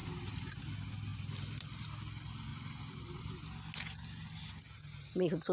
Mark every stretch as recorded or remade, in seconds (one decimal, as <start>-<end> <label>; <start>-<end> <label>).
0.0-0.6 remade; 0.6-1.1 recorded; 1.1-1.9 remade; 1.9-2.5 recorded; 2.5-3.2 remade; 3.2-5.5 recorded